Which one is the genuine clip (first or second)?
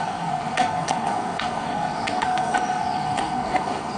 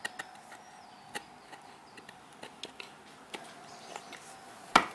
second